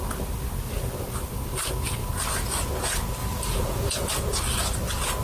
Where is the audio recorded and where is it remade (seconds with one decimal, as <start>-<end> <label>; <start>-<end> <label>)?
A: 0.0-3.2 recorded; 3.2-4.1 remade; 4.1-5.2 recorded